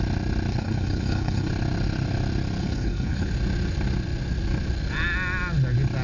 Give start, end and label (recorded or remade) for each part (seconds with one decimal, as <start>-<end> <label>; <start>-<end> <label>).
0.0-0.5 recorded; 0.5-1.5 remade; 1.5-2.6 recorded; 2.6-3.3 remade; 3.3-6.0 recorded